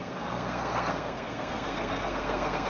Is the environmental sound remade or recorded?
remade